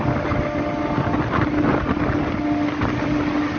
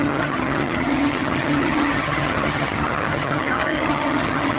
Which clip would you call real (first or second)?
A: first